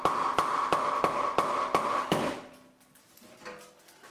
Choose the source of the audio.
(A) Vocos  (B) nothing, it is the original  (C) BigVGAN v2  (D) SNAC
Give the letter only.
B